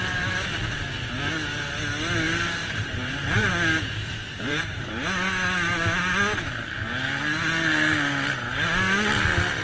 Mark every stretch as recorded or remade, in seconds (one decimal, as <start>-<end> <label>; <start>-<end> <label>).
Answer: 0.0-2.6 recorded; 2.6-3.5 remade; 3.5-4.2 recorded; 4.2-4.9 remade; 4.9-9.6 recorded